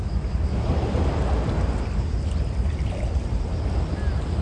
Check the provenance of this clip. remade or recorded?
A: recorded